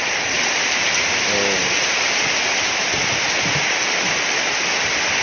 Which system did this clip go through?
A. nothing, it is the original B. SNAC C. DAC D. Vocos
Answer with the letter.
A